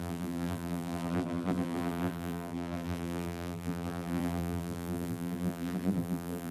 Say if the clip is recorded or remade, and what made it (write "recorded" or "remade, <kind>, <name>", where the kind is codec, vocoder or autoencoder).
remade, vocoder, BigVGAN v2